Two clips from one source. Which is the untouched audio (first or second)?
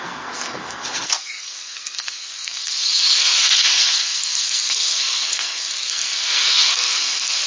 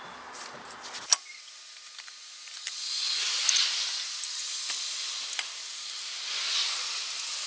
second